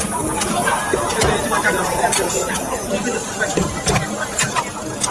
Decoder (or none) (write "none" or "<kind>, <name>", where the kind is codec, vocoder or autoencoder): none